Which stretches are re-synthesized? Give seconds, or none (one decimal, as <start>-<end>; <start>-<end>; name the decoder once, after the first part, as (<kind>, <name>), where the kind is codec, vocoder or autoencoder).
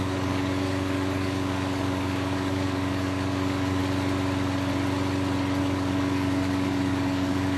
0.0-3.8 (codec, DAC); 5.6-7.6